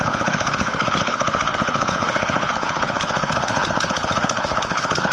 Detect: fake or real fake